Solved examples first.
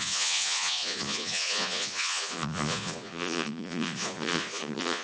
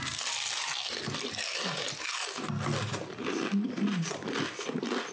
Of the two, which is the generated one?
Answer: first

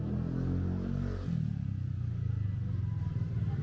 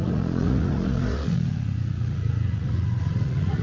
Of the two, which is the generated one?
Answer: second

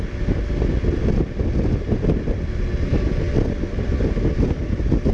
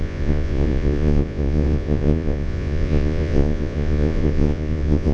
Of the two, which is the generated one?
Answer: second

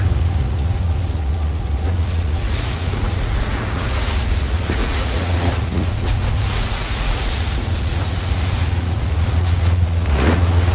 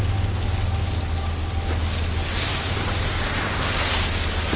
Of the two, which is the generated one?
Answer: first